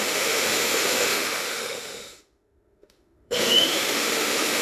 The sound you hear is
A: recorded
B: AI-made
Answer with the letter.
B